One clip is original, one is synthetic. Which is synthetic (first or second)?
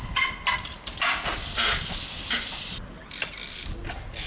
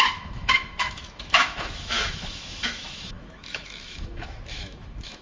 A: second